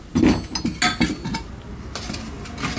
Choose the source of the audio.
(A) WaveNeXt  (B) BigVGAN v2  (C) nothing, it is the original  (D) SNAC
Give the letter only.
C